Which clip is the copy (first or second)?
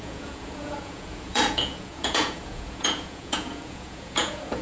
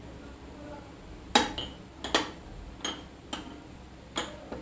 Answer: first